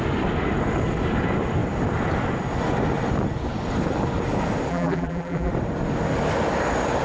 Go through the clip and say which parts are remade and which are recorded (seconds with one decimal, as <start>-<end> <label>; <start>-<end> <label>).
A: 0.0-4.7 recorded; 4.7-5.5 remade; 5.5-7.0 recorded